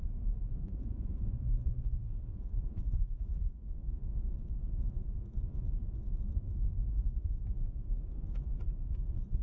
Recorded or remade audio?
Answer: remade